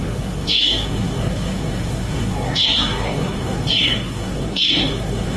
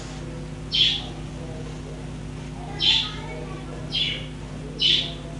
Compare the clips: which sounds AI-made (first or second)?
first